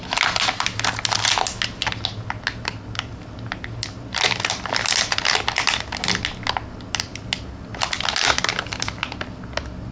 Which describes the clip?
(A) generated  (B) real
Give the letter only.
B